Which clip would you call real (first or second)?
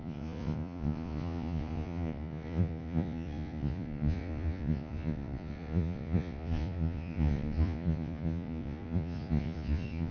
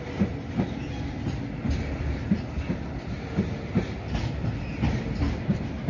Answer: second